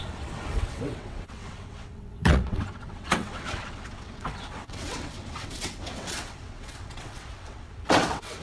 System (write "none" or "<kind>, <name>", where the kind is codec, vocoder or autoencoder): vocoder, WaveNeXt